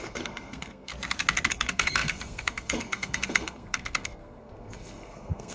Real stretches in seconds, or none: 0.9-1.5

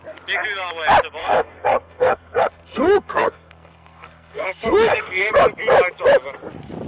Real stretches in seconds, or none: 0.0-1.2; 5.3-6.9

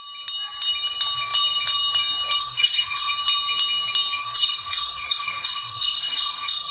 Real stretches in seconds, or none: 0.0-2.4; 3.1-4.2

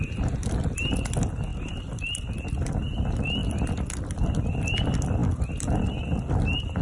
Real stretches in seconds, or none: 0.0-6.8

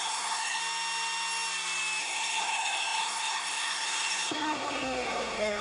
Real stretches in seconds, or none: 0.6-2.0

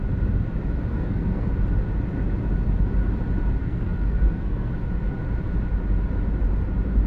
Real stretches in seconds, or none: 0.0-0.9; 1.5-3.6; 4.7-7.1